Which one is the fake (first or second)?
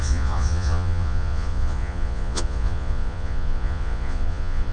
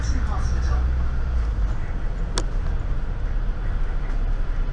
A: first